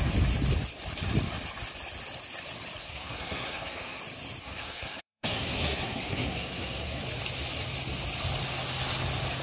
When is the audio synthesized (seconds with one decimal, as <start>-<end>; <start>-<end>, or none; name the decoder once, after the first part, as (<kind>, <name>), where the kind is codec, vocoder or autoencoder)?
2.8-4.0 (codec, SNAC); 4.4-7.0